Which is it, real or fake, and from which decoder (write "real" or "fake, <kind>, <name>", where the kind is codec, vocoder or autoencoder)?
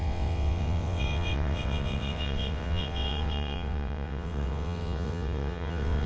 fake, vocoder, WaveNeXt